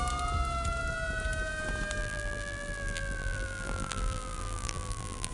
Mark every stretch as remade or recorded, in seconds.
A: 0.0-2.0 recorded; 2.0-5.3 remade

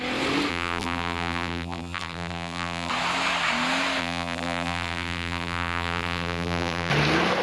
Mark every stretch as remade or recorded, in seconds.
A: 0.0-0.5 recorded; 0.5-2.9 remade; 2.9-4.0 recorded; 4.0-6.9 remade; 6.9-7.4 recorded

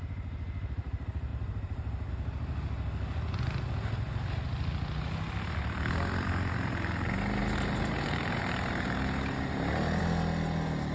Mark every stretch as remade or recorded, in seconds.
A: 0.0-1.3 recorded; 1.3-2.1 remade; 2.1-7.4 recorded; 7.4-10.0 remade; 10.0-10.9 recorded